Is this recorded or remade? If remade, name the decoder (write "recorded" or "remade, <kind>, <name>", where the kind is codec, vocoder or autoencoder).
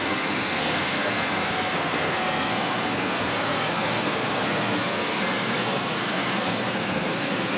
remade, codec, SNAC